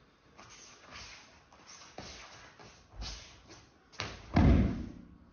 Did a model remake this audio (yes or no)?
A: no